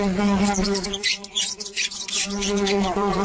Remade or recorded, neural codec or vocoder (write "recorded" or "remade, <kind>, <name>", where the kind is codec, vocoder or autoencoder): remade, vocoder, Vocos